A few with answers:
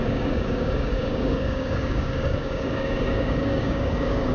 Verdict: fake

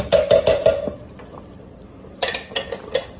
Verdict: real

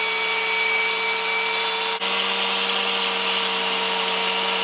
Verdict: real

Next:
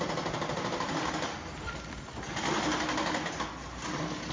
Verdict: real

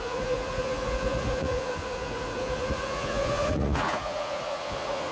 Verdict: fake